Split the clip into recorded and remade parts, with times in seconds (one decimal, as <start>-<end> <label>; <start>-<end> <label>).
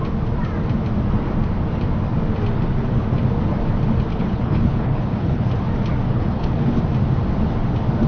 0.0-4.1 recorded; 4.1-5.5 remade; 5.5-6.1 recorded; 6.1-6.8 remade; 6.8-8.1 recorded